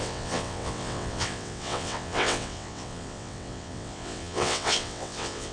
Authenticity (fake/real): fake